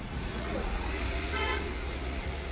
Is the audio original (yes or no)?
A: no